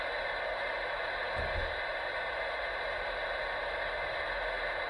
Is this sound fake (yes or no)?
no